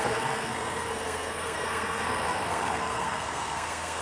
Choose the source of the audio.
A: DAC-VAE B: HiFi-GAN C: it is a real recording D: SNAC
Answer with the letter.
D